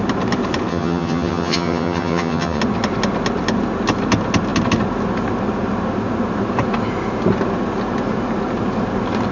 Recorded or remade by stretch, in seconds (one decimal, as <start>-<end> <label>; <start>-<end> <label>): 0.0-0.7 recorded; 0.7-2.6 remade; 2.6-9.3 recorded